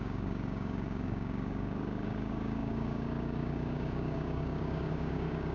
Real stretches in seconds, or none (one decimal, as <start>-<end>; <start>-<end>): none